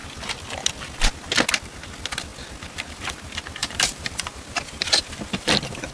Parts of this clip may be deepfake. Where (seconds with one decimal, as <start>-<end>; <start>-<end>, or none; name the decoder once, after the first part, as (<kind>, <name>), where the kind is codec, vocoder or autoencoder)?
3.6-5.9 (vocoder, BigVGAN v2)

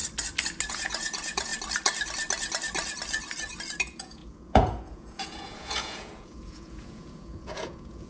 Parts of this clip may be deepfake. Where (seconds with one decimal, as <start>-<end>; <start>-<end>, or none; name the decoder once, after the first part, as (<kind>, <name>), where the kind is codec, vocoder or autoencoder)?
0.7-1.5 (vocoder, Vocos); 3.8-8.1

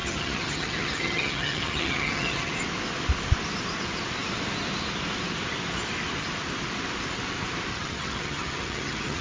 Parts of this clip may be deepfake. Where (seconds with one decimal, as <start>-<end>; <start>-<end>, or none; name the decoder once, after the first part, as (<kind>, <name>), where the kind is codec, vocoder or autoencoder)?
0.0-2.5 (vocoder, HiFi-GAN); 7.7-9.2

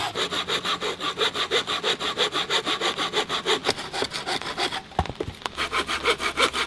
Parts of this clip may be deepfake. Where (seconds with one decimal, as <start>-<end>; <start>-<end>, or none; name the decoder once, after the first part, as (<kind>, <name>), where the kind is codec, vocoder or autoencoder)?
none